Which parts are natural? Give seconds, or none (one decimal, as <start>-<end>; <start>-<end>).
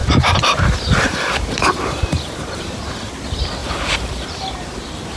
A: 3.1-3.6; 4.5-5.2